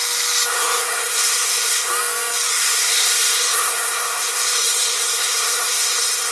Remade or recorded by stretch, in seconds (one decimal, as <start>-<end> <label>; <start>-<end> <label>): 0.0-0.5 recorded; 0.5-1.9 remade; 1.9-2.5 recorded; 2.5-6.3 remade